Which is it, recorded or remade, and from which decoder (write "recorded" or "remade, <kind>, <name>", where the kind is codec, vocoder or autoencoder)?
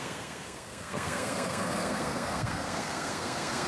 remade, codec, SNAC